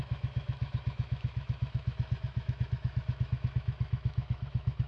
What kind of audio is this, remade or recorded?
remade